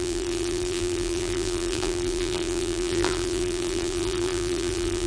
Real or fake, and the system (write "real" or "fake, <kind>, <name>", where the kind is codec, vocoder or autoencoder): fake, vocoder, BigVGAN v2